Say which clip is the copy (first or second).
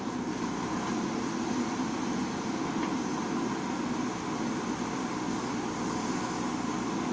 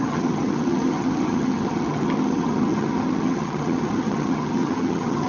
second